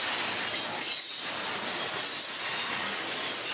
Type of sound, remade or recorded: recorded